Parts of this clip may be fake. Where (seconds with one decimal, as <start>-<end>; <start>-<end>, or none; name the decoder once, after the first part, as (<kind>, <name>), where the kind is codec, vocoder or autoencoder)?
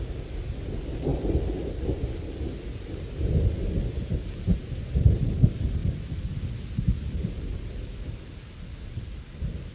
none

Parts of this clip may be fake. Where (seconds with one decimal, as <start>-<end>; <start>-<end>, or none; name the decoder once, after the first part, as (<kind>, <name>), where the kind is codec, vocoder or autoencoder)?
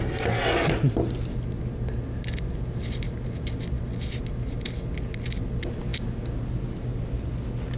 none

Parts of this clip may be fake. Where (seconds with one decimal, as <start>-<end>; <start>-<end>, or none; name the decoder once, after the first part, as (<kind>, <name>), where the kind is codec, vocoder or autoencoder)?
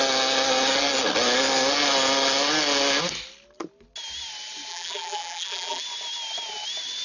4.7-5.8 (vocoder, BigVGAN v2)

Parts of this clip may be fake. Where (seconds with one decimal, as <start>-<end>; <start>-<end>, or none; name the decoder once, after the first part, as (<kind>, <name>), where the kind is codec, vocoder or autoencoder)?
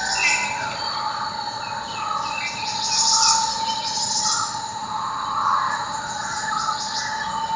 none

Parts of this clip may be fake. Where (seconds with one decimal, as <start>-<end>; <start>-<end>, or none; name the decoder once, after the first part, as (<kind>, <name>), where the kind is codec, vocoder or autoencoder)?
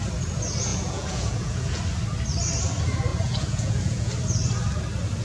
0.7-1.8 (vocoder, Vocos); 3.1-4.1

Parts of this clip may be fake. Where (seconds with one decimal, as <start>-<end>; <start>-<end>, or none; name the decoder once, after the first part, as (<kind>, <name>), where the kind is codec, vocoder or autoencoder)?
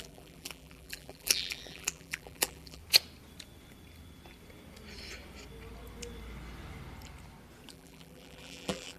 0.0-2.8 (vocoder, BigVGAN v2); 7.7-9.0